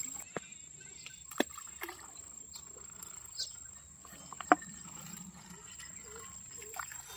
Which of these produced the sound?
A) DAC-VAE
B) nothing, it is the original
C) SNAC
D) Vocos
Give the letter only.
B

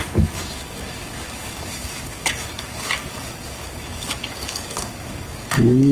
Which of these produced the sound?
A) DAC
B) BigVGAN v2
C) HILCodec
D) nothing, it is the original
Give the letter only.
A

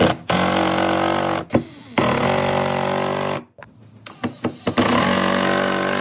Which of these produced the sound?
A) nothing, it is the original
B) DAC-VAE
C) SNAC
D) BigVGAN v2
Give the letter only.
A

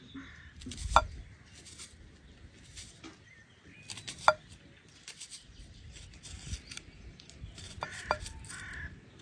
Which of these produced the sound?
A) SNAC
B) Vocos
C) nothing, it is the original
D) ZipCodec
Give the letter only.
C